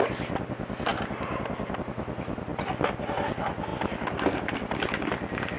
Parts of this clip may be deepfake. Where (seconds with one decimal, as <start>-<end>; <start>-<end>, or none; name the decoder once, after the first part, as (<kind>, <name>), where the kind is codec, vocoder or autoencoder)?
none

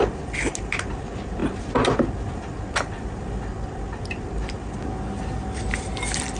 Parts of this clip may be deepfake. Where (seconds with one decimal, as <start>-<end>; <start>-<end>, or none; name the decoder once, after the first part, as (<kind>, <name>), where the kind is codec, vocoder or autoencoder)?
none

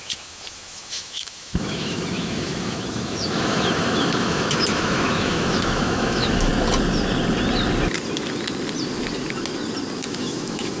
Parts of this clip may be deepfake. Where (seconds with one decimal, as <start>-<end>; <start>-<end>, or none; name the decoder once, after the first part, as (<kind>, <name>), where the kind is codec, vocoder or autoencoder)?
0.0-6.5 (autoencoder, DAC-VAE); 10.0-10.8